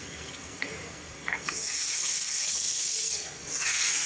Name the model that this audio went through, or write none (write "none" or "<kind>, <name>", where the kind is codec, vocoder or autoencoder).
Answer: codec, SNAC